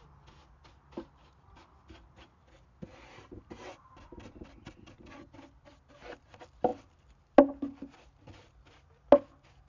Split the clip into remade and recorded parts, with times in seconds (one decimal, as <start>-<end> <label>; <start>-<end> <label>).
0.0-9.7 recorded